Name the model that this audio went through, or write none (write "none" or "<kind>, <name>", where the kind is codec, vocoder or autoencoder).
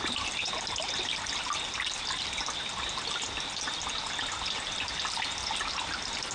none